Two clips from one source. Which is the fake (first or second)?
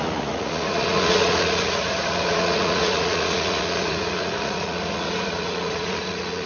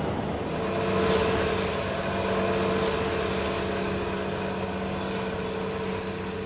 first